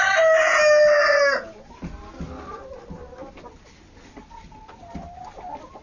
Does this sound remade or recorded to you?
recorded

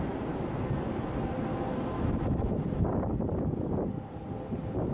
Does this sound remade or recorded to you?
recorded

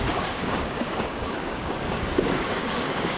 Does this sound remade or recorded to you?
remade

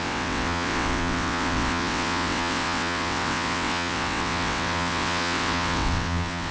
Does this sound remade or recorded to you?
remade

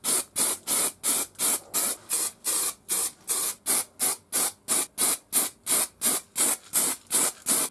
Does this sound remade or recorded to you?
recorded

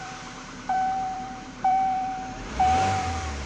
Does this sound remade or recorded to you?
remade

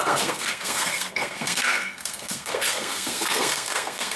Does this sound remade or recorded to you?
remade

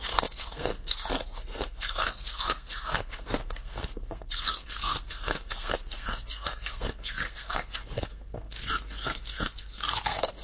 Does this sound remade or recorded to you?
remade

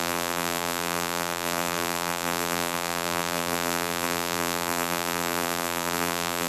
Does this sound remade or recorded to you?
remade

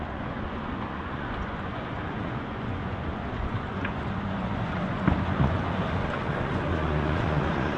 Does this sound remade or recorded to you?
remade